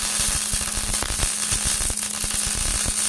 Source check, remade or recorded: recorded